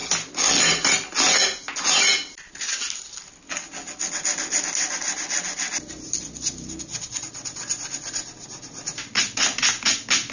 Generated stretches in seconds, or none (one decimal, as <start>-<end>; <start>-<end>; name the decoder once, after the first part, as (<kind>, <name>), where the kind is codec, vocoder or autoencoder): none